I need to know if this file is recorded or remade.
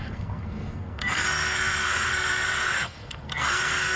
remade